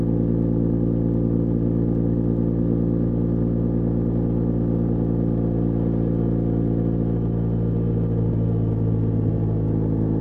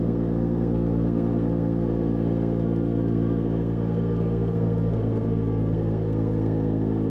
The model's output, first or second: second